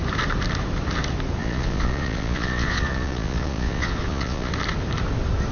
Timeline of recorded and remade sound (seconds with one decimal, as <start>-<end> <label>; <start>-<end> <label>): 0.0-1.4 recorded; 1.4-4.5 remade; 4.5-5.5 recorded